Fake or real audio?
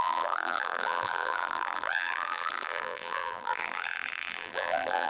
fake